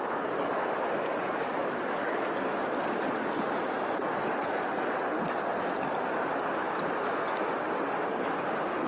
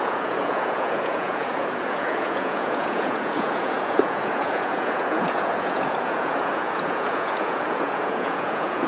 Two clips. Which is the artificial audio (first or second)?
second